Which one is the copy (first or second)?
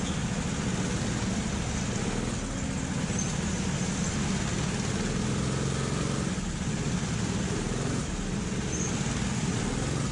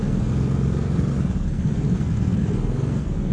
second